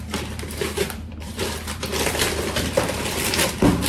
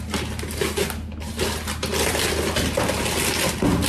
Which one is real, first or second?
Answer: second